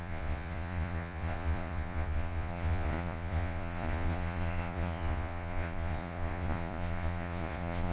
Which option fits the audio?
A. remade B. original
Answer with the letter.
A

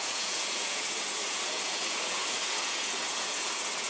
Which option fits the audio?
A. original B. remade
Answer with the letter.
B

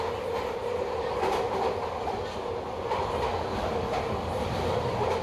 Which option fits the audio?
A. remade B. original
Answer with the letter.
B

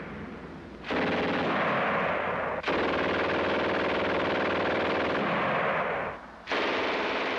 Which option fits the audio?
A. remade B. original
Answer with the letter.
B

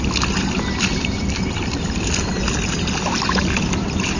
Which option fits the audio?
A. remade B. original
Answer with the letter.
B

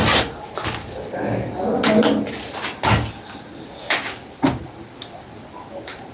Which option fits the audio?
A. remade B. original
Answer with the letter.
B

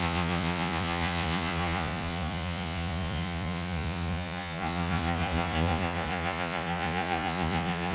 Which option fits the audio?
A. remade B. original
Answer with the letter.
A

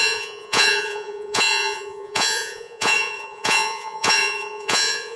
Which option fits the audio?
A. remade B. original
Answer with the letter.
A